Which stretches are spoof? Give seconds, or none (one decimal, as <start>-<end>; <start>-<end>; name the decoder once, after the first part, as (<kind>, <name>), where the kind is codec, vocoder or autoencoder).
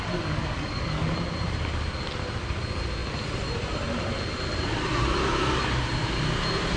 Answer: 0.4-1.0 (codec, DAC)